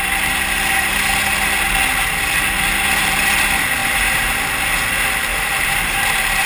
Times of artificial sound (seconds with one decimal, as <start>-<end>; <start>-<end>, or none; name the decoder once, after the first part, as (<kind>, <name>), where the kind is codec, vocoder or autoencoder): 3.8-4.3 (vocoder, BigVGAN v2); 5.3-6.5